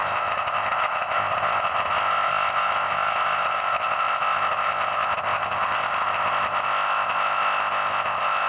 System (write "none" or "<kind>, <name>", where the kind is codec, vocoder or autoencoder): codec, ZipCodec